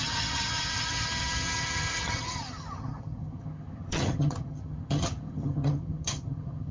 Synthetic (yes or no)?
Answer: yes